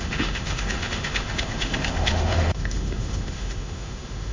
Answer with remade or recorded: remade